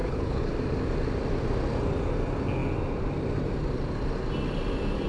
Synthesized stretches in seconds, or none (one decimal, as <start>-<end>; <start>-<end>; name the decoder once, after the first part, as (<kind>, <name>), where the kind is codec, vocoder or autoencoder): 0.0-0.5 (codec, HILCodec)

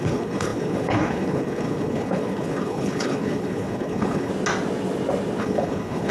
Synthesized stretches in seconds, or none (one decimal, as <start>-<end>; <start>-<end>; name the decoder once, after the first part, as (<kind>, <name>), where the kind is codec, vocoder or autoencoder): 0.0-4.3 (codec, HILCodec); 5.4-6.1